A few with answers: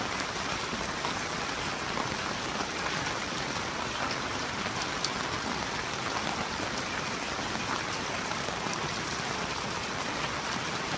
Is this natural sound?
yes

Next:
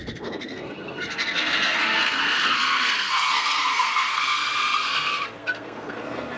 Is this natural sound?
no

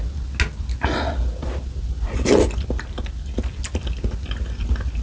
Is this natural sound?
yes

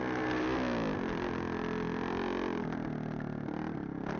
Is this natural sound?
yes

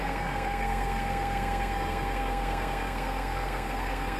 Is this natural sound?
no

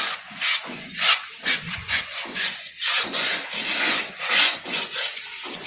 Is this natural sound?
no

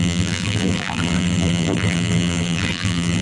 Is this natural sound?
no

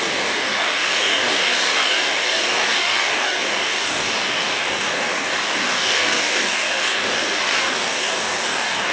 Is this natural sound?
no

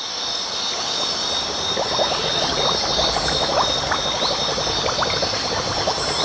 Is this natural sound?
yes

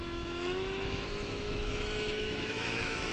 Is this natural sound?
no